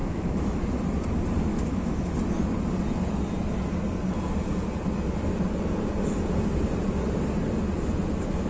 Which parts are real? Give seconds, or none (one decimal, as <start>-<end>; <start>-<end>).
0.7-1.5; 2.1-8.5